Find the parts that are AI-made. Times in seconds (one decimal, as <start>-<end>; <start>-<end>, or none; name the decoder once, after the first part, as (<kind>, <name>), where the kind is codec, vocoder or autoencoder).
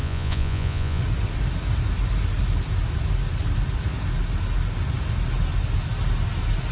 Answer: 0.0-1.0 (vocoder, Vocos)